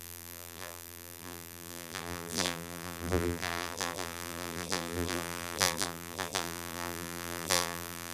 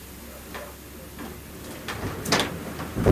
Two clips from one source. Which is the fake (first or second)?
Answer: first